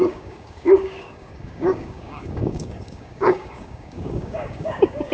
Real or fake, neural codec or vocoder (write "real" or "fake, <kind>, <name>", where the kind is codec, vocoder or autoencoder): fake, codec, DAC